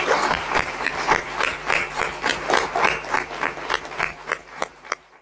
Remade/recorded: remade